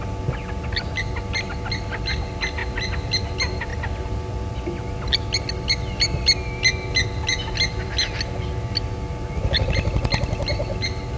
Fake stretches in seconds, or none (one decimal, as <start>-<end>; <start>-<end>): none